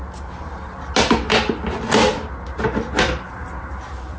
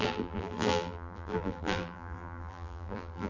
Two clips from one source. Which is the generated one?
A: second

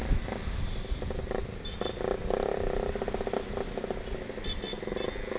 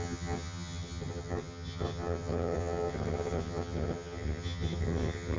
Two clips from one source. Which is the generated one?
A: second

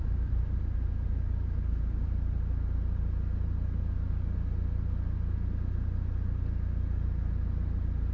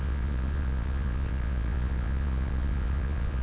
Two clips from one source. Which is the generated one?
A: second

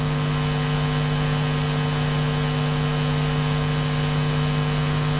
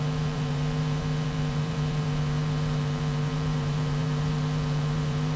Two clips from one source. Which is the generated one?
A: second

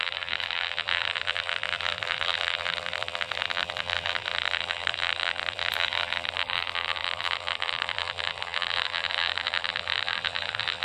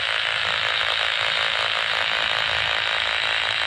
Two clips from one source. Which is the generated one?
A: first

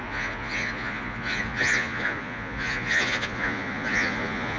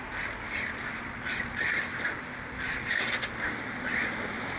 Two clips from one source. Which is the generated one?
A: first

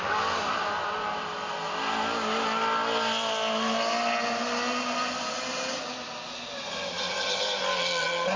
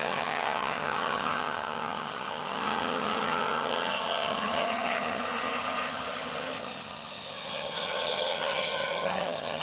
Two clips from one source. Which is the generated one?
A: second